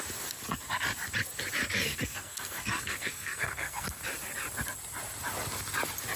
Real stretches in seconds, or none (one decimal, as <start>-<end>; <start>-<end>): 0.0-1.8; 4.0-6.2